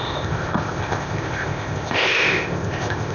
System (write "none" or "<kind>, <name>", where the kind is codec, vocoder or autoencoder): codec, ZipCodec